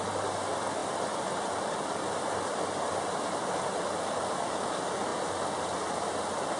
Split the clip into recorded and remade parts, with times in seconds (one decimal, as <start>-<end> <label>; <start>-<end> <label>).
0.0-6.6 recorded